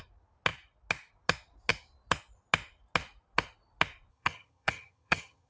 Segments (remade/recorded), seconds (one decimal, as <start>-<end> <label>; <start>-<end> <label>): 0.0-4.1 recorded; 4.1-5.5 remade